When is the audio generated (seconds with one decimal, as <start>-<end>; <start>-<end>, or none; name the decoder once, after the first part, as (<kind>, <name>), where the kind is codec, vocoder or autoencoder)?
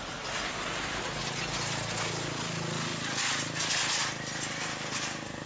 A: none